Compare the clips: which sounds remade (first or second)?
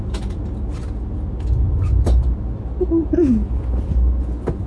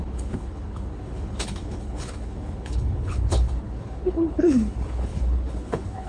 second